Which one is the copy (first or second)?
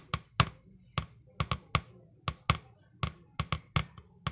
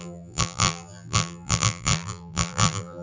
second